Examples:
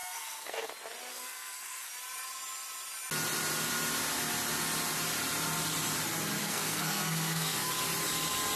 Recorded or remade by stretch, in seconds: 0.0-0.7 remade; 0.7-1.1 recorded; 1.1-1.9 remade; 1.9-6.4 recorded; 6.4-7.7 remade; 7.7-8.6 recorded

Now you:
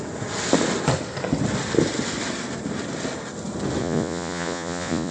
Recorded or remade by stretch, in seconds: 0.0-3.8 recorded; 3.8-5.1 remade

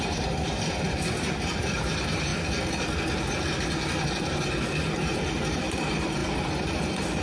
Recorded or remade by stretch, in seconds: 0.0-2.3 remade; 2.3-4.1 recorded; 4.1-7.2 remade